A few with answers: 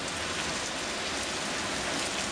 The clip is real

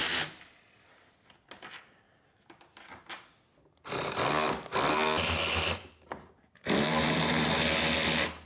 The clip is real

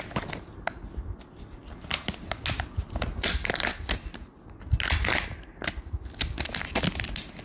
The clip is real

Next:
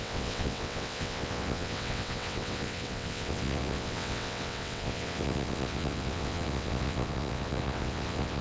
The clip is fake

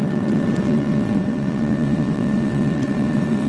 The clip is fake